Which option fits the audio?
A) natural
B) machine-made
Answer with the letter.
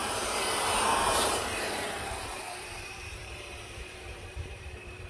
B